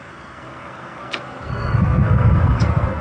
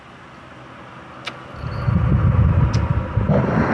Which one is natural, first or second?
second